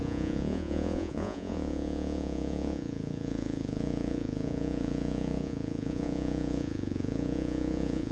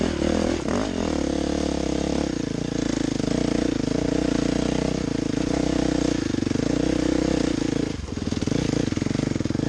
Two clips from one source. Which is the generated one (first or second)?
first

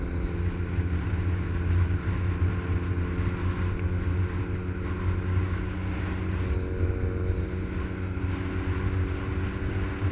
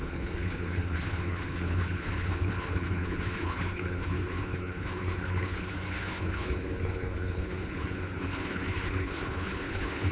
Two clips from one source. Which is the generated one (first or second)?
second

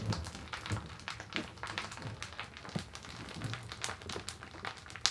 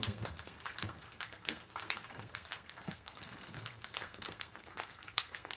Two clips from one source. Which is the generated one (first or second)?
second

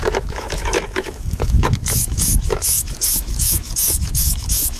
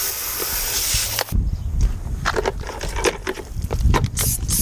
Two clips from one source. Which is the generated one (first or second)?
first